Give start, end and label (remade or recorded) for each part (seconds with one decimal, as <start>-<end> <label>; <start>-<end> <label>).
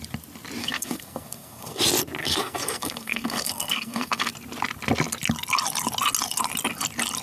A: 0.0-0.6 recorded; 0.6-1.8 remade; 1.8-2.2 recorded; 2.2-4.3 remade; 4.3-7.2 recorded